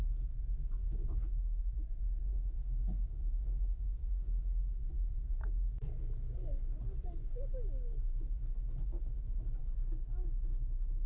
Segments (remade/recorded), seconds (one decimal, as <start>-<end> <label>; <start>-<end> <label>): 0.0-0.8 recorded; 0.8-1.6 remade; 1.6-2.3 recorded; 2.3-4.9 remade; 4.9-11.1 recorded